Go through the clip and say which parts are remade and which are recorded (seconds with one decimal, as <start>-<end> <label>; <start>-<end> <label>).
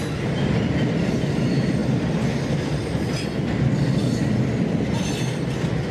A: 0.0-1.8 remade; 1.8-5.2 recorded; 5.2-5.9 remade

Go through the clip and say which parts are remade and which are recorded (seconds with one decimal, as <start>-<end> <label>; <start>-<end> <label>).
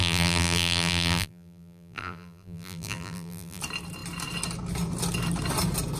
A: 0.0-3.6 remade; 3.6-6.0 recorded